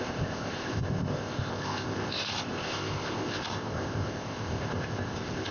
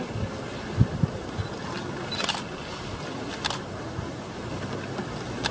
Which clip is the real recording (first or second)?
second